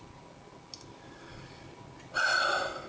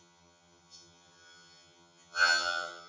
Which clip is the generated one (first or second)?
second